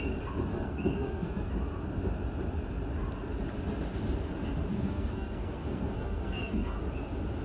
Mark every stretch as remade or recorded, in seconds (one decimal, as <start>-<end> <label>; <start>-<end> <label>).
0.0-0.5 recorded; 0.5-1.5 remade; 1.5-4.7 recorded; 4.7-6.8 remade; 6.8-7.4 recorded

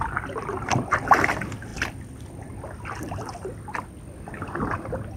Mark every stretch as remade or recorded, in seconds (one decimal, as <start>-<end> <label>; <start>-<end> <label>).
0.0-5.2 recorded

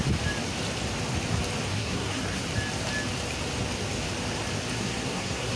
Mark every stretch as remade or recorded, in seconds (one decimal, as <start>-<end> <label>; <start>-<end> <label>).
0.0-1.7 recorded; 1.7-2.4 remade; 2.4-4.7 recorded; 4.7-5.6 remade

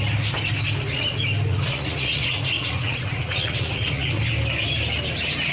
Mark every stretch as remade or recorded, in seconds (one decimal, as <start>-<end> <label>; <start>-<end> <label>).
0.0-1.5 recorded; 1.5-4.2 remade; 4.2-5.5 recorded